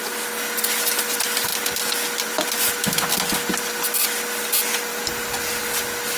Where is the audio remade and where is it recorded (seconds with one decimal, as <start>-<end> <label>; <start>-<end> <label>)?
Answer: 0.0-6.2 recorded